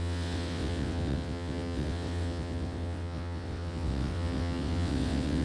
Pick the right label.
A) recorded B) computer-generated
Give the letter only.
B